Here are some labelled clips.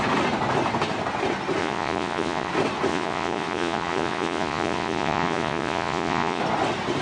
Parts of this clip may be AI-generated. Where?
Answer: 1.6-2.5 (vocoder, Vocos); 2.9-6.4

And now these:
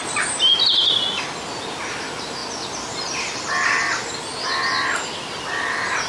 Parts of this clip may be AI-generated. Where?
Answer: none

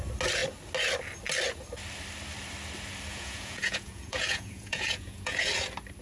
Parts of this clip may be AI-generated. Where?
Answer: 3.1-5.5 (vocoder, Vocos)

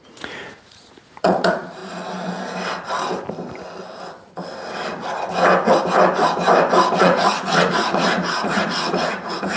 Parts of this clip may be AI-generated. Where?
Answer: 0.0-1.8 (vocoder, Vocos); 7.0-9.6

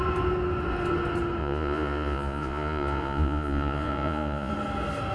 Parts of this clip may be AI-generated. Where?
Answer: 1.4-4.5 (vocoder, Vocos)

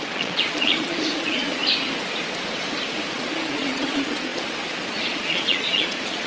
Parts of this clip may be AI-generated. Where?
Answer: 0.0-1.6 (vocoder, Vocos); 3.1-6.3

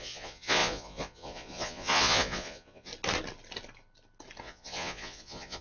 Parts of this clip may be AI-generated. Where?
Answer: 0.0-2.9 (vocoder, Vocos); 4.4-5.6